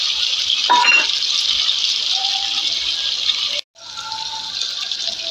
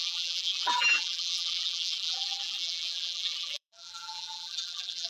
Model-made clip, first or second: second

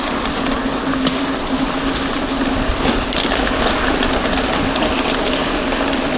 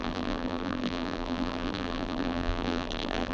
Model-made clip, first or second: second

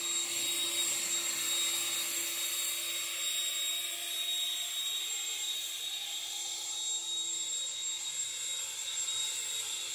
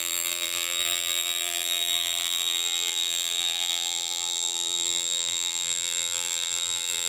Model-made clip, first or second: second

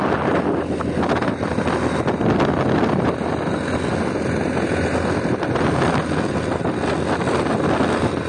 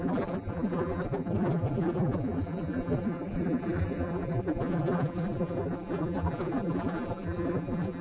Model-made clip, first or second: second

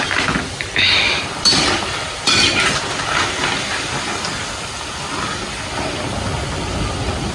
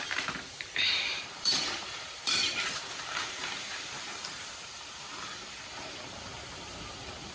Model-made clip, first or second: second